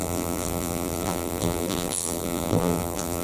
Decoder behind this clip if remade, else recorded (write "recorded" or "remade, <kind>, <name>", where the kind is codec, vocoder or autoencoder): remade, vocoder, BigVGAN v2